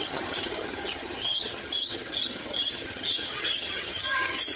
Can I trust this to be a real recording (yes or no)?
no